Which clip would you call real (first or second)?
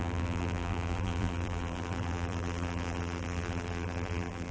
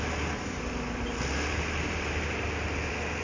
second